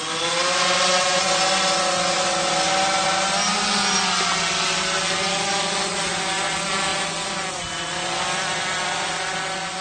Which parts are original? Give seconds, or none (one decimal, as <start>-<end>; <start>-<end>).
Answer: 0.0-9.8